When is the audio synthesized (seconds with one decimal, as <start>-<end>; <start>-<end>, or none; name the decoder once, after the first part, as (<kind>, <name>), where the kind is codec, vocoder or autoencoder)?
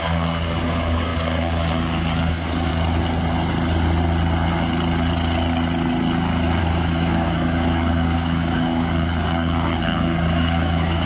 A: 0.0-2.7 (codec, DAC); 6.6-11.1